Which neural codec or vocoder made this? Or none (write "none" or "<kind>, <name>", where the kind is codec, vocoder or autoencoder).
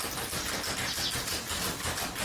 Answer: none